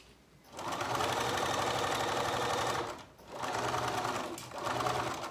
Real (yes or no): yes